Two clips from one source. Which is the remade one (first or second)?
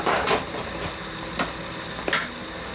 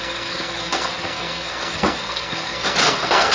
second